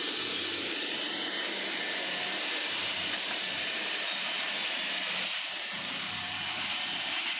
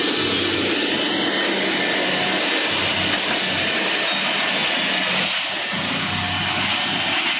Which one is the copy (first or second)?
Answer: first